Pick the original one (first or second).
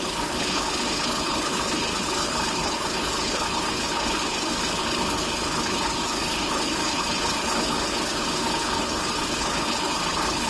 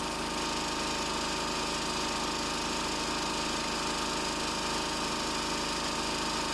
second